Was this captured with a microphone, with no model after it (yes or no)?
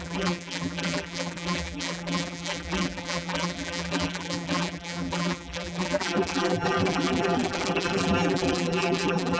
no